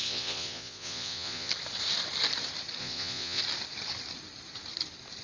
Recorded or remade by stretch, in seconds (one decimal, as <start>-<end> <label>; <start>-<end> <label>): 0.0-1.5 remade; 1.5-2.8 recorded; 2.8-3.4 remade; 3.4-5.2 recorded